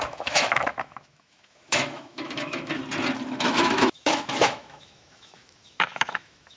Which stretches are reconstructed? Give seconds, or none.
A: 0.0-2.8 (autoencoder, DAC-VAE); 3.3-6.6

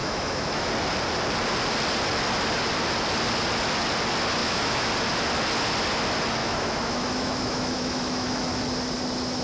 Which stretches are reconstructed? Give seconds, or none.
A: 0.0-0.7 (autoencoder, DAC-VAE); 4.4-4.9; 6.4-8.5

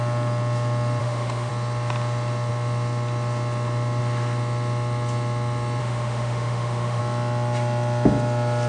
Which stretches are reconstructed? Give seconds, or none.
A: 1.0-1.5 (autoencoder, DAC-VAE); 5.8-7.0

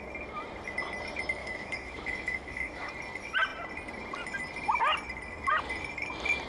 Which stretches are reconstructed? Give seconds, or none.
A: 1.4-2.9 (autoencoder, DAC-VAE)